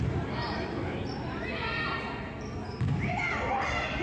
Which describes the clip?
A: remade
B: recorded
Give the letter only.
B